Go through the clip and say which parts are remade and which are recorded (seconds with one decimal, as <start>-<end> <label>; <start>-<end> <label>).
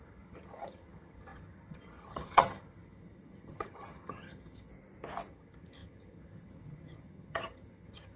0.0-4.7 remade; 4.7-5.3 recorded; 5.3-8.2 remade